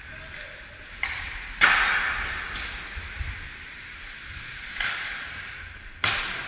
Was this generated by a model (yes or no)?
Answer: no